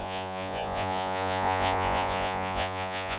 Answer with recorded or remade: remade